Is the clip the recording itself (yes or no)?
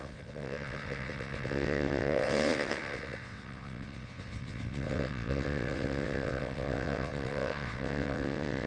no